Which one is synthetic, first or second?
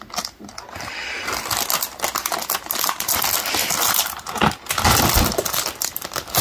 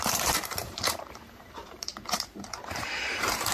second